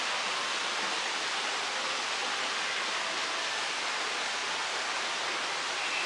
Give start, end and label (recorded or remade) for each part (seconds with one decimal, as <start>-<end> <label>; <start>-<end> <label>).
0.0-6.1 recorded